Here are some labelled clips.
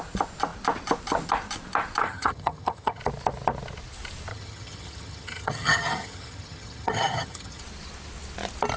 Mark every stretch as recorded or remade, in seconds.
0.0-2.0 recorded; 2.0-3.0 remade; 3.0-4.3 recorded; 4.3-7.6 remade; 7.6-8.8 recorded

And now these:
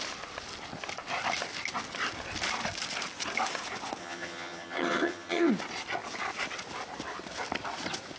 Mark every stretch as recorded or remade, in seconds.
0.0-4.0 recorded; 4.0-5.5 remade; 5.5-8.2 recorded

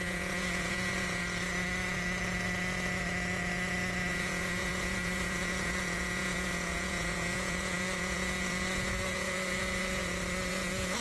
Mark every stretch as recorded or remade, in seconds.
0.0-1.2 remade; 1.2-4.1 recorded; 4.1-10.0 remade; 10.0-10.5 recorded; 10.5-11.0 remade